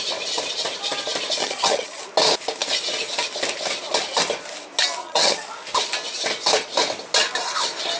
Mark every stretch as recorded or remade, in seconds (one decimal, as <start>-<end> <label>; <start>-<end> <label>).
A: 0.0-1.4 recorded; 1.4-2.0 remade; 2.0-5.0 recorded; 5.0-5.5 remade; 5.5-8.0 recorded